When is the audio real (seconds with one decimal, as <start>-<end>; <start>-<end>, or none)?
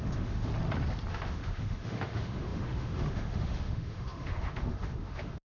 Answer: 0.5-1.1